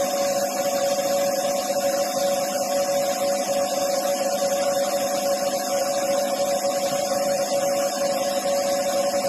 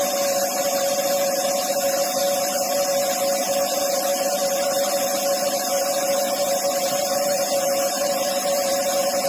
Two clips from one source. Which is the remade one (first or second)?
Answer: second